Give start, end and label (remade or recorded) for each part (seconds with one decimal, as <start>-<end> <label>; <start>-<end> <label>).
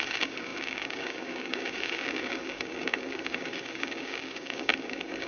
0.0-5.3 remade